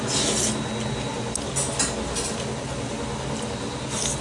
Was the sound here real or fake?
real